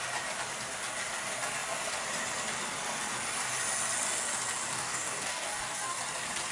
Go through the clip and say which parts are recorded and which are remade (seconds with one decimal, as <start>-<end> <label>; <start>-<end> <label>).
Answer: 0.0-4.7 recorded; 4.7-6.0 remade; 6.0-6.5 recorded